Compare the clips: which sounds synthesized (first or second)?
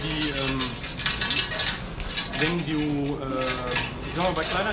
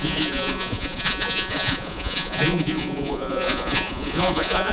second